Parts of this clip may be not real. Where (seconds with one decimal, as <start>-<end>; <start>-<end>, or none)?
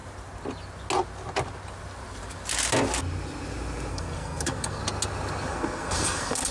3.9-4.8; 5.5-6.5